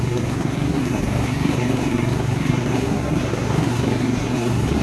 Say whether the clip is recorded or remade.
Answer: remade